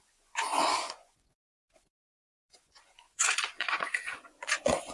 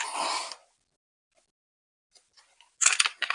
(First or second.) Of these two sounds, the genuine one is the second